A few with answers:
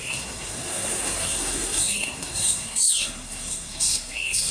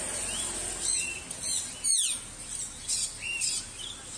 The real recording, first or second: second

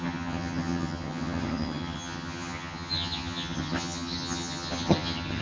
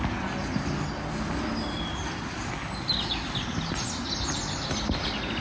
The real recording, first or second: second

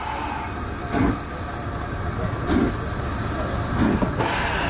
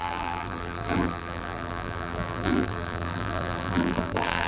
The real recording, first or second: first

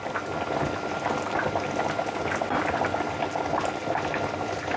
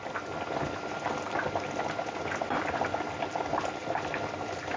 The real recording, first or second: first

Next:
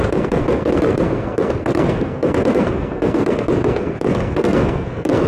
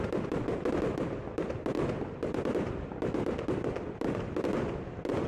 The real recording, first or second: second